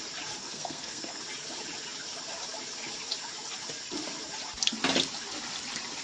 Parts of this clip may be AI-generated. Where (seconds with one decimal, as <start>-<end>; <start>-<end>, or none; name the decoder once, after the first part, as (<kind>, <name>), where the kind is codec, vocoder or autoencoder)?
0.4-1.2 (codec, SNAC)